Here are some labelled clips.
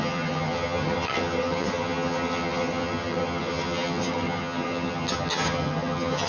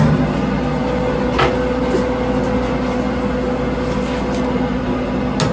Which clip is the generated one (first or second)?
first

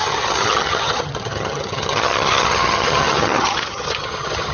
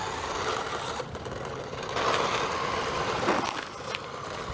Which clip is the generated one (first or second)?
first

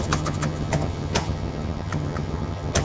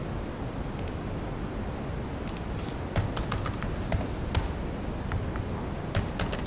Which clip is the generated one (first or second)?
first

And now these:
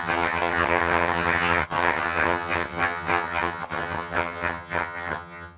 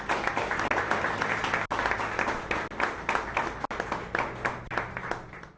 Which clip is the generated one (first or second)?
first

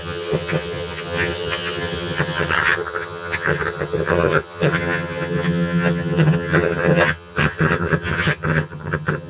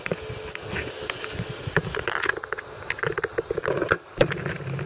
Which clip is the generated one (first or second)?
first